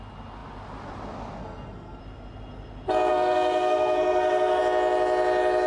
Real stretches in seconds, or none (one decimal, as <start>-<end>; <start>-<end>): 0.0-1.4; 2.0-3.1; 4.6-5.7